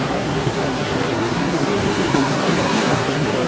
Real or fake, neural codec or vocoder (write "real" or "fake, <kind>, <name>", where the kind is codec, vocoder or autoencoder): fake, codec, SNAC